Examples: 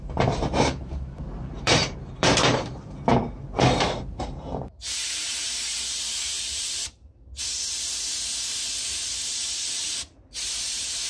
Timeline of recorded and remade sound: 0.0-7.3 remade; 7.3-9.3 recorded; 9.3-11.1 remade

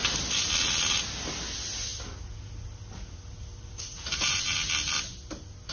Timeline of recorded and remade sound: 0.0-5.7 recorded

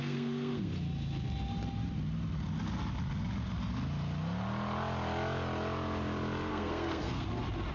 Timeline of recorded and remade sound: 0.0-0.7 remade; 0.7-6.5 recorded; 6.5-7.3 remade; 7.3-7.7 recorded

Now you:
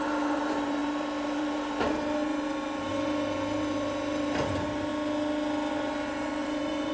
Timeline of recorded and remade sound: 0.0-4.9 remade; 4.9-5.7 recorded; 5.7-6.9 remade

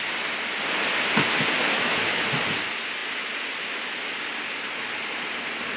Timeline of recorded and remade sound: 0.0-1.6 recorded; 1.6-2.2 remade; 2.2-5.8 recorded

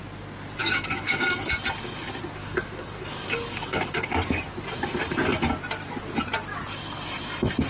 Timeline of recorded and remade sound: 0.0-0.6 recorded; 0.6-1.5 remade; 1.5-2.4 recorded; 2.4-4.4 remade; 4.4-7.7 recorded

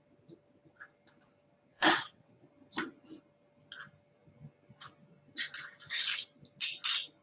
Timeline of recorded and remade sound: 0.0-1.7 recorded; 1.7-2.5 remade; 2.5-7.2 recorded